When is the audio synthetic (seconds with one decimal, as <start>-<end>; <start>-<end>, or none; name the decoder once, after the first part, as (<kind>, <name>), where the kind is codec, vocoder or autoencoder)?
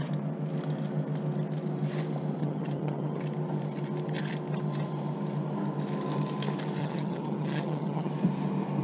2.4-3.2 (vocoder, HiFi-GAN); 6.8-8.1